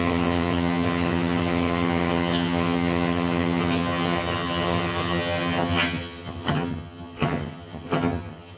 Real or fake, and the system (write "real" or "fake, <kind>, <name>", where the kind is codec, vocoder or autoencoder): fake, vocoder, HiFi-GAN